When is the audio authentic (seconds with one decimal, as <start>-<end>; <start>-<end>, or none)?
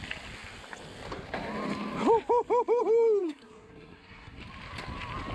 0.0-3.2; 4.4-5.3